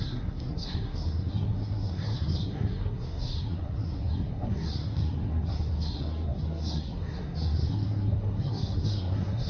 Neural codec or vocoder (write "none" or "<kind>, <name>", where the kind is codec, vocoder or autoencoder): codec, SNAC